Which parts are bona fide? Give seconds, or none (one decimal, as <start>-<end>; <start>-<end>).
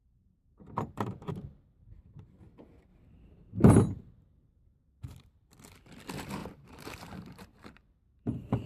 1.3-6.4; 7.8-8.7